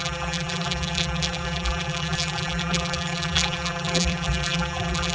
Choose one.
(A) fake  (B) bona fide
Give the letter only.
A